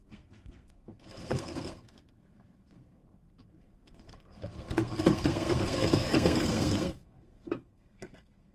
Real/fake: fake